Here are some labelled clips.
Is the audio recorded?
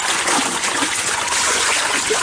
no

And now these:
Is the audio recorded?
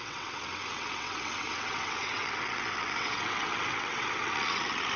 no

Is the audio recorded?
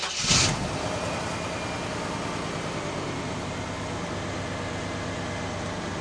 yes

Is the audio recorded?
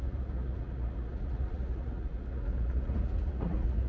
no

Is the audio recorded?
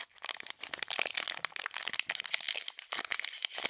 yes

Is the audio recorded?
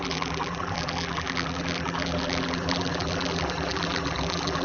no